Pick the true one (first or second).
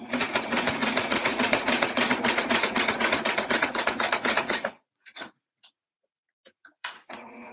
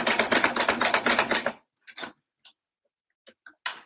second